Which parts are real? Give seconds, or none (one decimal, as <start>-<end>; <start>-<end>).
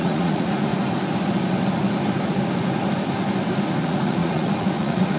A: 0.7-3.8